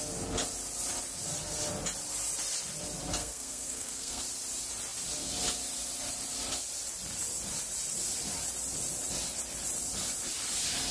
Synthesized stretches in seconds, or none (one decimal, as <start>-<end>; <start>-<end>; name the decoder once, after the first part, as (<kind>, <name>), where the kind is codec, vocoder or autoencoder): 3.2-4.2 (codec, SNAC)